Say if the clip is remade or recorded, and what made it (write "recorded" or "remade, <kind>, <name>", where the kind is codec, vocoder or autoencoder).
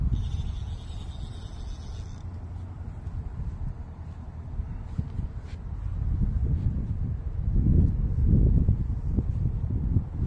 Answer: recorded